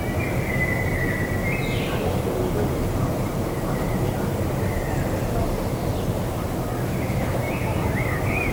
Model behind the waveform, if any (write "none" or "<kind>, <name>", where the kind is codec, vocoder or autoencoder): none